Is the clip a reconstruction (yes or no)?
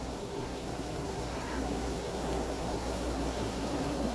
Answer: yes